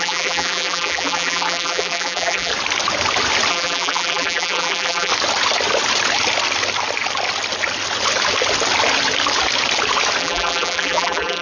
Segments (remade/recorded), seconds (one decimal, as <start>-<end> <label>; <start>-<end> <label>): 0.0-2.5 remade; 2.5-3.5 recorded; 3.5-5.1 remade; 5.1-10.2 recorded; 10.2-11.4 remade